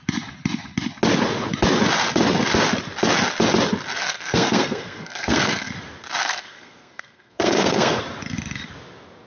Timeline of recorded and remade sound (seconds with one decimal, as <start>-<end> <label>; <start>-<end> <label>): 0.0-4.0 recorded; 4.0-5.7 remade; 5.7-6.2 recorded; 6.2-8.0 remade; 8.0-9.3 recorded